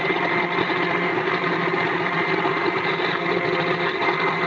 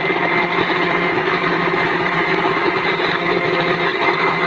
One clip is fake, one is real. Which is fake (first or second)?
second